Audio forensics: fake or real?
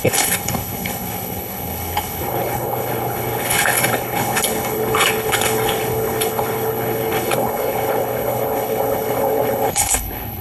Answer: fake